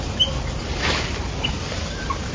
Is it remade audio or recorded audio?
recorded